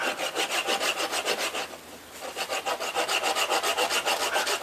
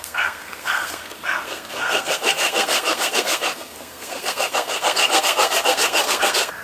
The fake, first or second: second